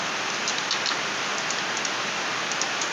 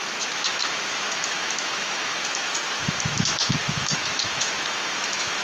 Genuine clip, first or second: first